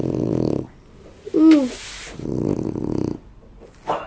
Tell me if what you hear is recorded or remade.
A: recorded